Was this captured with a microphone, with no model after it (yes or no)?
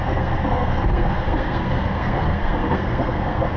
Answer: no